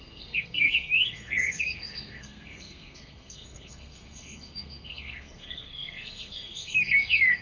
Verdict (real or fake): fake